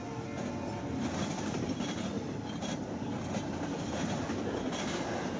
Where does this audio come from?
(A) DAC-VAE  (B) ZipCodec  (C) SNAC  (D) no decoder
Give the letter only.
D